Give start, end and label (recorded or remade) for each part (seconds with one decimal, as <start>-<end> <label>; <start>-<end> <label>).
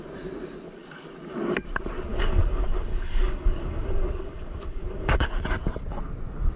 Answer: 0.0-2.1 recorded; 2.1-5.4 remade; 5.4-6.6 recorded